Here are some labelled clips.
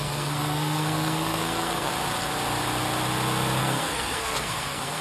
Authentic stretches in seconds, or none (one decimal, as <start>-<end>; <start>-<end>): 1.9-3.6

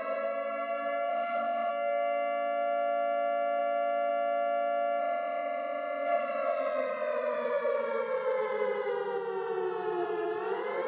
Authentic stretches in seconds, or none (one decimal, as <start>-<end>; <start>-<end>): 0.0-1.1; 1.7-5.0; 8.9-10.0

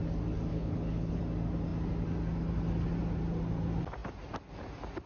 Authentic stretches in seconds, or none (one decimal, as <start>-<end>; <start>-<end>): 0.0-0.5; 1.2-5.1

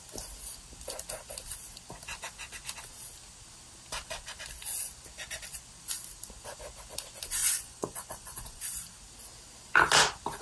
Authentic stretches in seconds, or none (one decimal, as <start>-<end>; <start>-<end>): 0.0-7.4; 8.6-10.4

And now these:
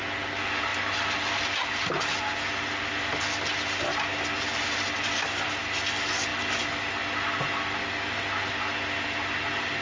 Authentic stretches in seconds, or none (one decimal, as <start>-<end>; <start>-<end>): 0.0-9.8